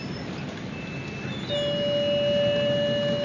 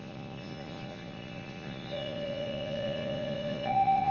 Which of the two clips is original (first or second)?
first